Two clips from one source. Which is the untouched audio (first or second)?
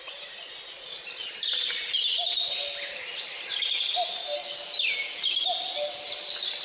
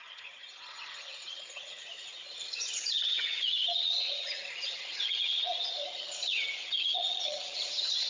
first